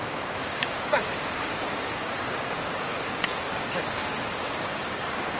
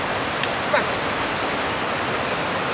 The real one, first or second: second